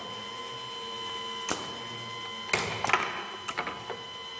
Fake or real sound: real